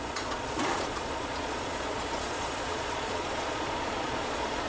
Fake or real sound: fake